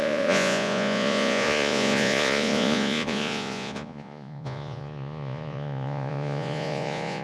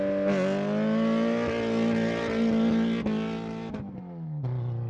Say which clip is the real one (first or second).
second